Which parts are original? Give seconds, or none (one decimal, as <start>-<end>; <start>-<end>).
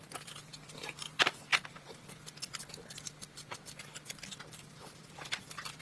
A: 0.0-5.8